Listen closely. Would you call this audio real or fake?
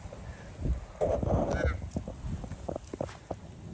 real